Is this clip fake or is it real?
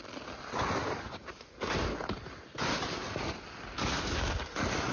real